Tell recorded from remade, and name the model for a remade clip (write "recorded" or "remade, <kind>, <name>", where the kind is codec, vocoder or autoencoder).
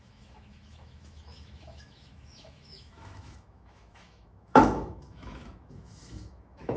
remade, autoencoder, DAC-VAE